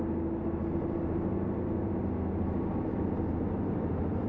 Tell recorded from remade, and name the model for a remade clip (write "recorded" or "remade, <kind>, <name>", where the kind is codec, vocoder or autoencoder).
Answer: recorded